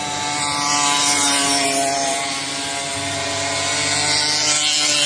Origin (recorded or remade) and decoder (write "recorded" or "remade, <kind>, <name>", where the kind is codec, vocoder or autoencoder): recorded